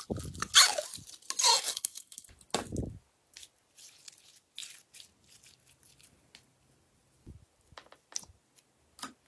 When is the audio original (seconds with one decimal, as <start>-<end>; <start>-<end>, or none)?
0.0-1.5; 2.3-9.3